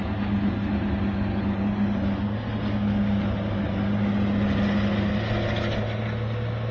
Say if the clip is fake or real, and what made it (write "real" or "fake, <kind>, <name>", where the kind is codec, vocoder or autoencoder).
real